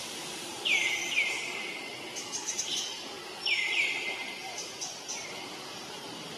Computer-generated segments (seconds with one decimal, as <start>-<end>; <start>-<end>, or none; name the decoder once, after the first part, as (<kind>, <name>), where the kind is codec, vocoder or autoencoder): 0.0-1.7 (vocoder, BigVGAN v2); 3.5-5.1; 5.9-6.4

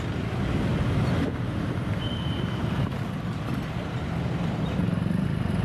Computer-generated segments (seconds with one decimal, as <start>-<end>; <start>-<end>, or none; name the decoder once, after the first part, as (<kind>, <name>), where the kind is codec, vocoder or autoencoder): none

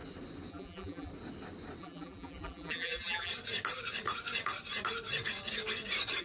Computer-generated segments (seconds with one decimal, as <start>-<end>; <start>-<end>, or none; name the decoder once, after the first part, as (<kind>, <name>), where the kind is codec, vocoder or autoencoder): 0.5-1.1 (vocoder, BigVGAN v2); 1.8-3.3

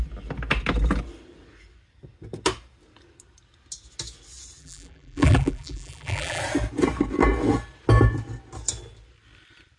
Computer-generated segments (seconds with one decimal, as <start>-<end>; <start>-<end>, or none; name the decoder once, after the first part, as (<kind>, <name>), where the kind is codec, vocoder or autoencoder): 4.6-6.4 (vocoder, BigVGAN v2)

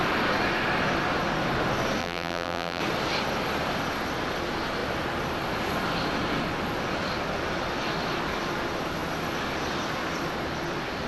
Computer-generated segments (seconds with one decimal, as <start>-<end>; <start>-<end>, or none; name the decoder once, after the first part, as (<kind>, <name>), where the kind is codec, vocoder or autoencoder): 2.0-2.8 (vocoder, BigVGAN v2)